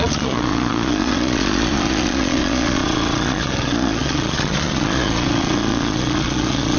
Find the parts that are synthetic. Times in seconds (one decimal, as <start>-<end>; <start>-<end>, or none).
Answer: 0.0-6.8